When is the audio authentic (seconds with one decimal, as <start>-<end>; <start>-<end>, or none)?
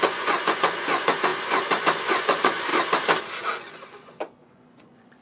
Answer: 2.7-3.4